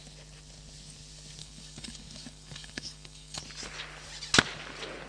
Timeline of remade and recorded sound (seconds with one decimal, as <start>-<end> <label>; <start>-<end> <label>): 0.0-1.4 recorded; 1.4-3.4 remade; 3.4-5.1 recorded